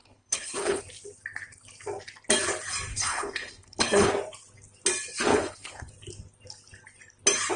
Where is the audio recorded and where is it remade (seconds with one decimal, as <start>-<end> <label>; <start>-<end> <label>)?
0.0-0.8 remade; 0.8-2.9 recorded; 2.9-4.1 remade; 4.1-5.3 recorded; 5.3-5.9 remade; 5.9-7.6 recorded